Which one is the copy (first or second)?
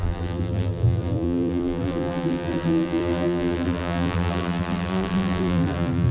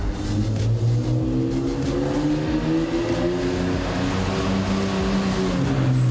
first